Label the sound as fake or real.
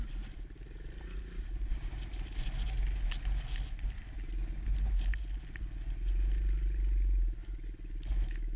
real